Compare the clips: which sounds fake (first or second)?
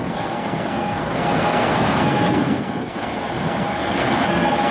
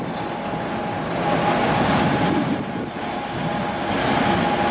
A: first